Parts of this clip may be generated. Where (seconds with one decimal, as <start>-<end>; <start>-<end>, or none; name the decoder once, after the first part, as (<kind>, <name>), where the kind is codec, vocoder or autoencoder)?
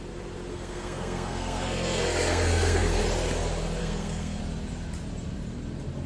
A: 0.5-3.0 (codec, SNAC); 3.8-4.4